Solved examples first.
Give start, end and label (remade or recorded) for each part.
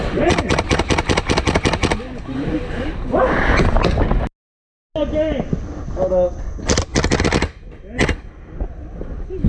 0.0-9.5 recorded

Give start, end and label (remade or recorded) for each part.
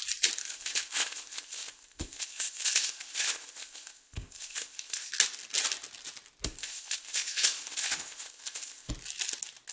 0.0-0.4 recorded; 0.4-5.1 remade; 5.1-6.6 recorded; 6.6-8.9 remade; 8.9-9.7 recorded